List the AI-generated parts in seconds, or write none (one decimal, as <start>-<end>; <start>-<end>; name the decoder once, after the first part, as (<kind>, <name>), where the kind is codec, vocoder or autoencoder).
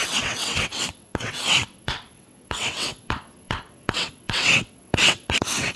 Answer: 0.0-5.8 (vocoder, WaveNeXt)